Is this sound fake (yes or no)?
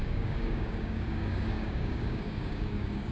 yes